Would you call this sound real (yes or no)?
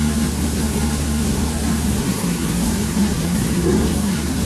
no